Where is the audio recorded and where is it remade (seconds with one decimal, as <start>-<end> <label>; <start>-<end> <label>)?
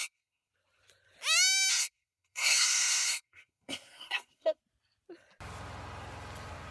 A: 0.0-0.5 remade; 0.5-1.7 recorded; 1.7-4.6 remade; 4.6-6.7 recorded